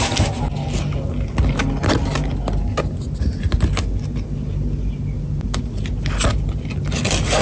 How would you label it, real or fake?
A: real